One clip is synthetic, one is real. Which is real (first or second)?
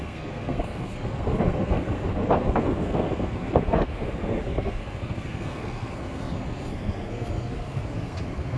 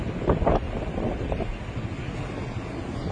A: second